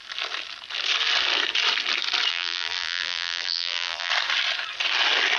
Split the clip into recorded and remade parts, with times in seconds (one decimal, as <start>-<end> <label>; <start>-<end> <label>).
0.0-2.3 recorded; 2.3-4.1 remade; 4.1-5.4 recorded